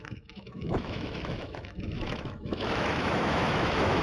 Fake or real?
fake